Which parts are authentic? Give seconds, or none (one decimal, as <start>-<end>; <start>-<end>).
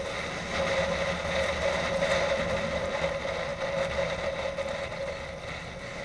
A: 0.0-6.0